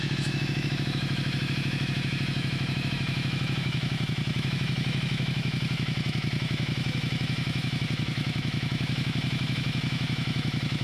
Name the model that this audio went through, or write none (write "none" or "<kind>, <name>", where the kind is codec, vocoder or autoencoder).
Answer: autoencoder, DAC-VAE